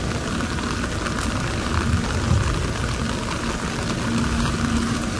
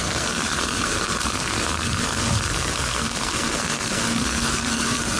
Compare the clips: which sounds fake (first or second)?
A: second